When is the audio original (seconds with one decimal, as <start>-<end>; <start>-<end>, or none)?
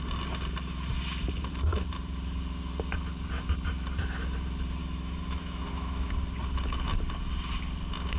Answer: 0.0-4.8; 6.1-8.2